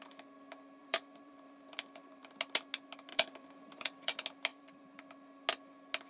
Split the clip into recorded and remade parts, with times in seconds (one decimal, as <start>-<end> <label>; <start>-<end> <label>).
0.0-0.8 recorded; 0.8-2.3 remade; 2.3-3.1 recorded; 3.1-4.1 remade; 4.1-4.5 recorded; 4.5-5.0 remade; 5.0-6.1 recorded